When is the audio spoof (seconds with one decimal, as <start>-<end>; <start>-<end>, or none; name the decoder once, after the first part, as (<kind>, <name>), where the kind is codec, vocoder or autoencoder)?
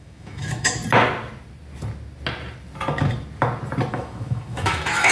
0.0-0.8 (autoencoder, DAC-VAE); 3.9-5.1